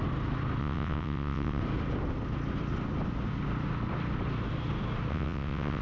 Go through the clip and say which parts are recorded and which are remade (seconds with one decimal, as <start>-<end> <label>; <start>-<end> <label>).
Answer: 0.0-0.6 recorded; 0.6-1.6 remade; 1.6-5.1 recorded; 5.1-5.8 remade